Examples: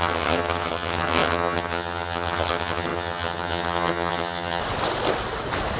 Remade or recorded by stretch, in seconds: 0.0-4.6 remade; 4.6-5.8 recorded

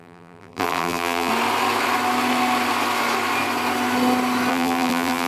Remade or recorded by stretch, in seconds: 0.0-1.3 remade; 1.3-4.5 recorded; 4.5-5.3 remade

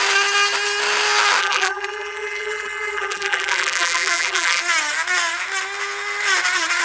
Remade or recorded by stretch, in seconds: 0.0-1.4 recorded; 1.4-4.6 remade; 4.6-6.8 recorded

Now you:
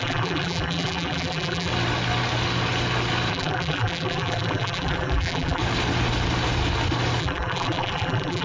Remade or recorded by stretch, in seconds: 0.0-1.7 remade; 1.7-3.3 recorded; 3.3-5.6 remade; 5.6-7.2 recorded; 7.2-8.4 remade

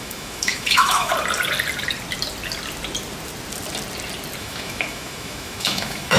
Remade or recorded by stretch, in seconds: 0.0-1.1 remade; 1.1-4.4 recorded; 4.4-6.2 remade

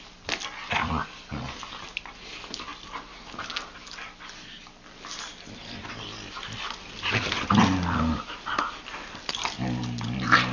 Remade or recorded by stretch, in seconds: 0.0-10.5 recorded